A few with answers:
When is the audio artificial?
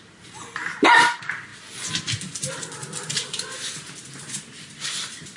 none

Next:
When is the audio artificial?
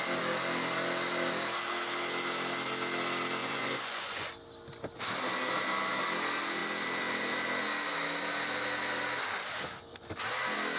3.4-4.3 (vocoder, Vocos)